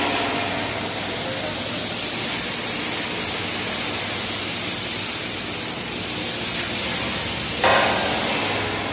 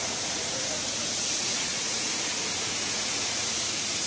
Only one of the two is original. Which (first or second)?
first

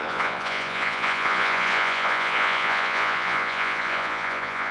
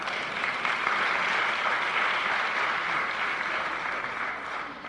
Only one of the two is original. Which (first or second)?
second